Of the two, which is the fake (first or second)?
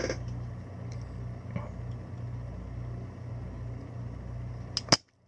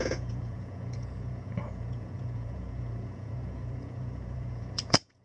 second